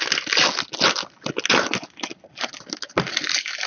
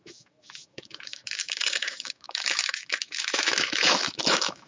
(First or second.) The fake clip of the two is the second